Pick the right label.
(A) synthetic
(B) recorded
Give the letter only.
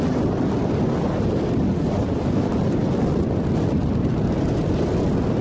B